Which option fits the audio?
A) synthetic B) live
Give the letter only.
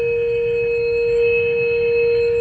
A